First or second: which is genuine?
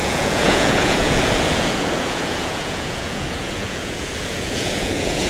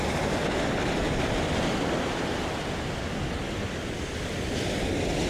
second